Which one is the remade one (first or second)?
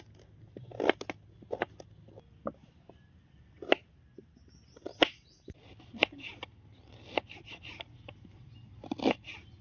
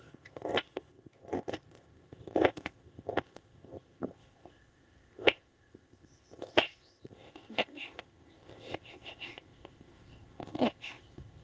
second